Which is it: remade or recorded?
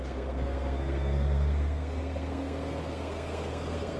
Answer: remade